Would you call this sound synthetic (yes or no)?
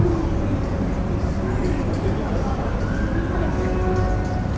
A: no